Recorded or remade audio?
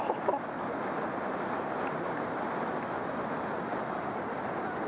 recorded